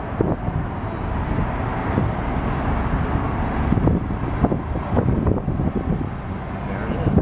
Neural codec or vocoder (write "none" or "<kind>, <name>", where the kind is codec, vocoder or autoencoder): none